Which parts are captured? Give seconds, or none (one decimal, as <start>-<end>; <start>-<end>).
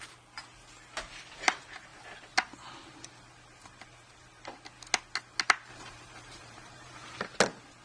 0.0-5.7; 7.2-7.8